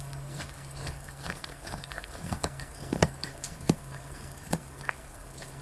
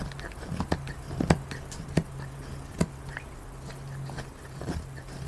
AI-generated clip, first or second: first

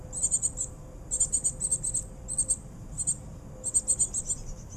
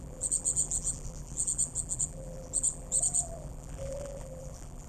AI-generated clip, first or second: second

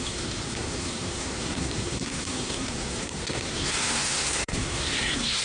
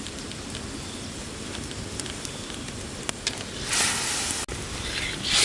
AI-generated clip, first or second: first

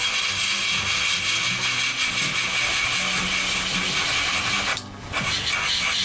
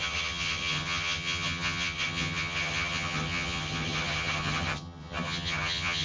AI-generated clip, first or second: second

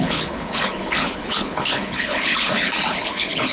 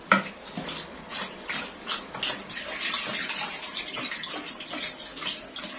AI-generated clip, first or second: first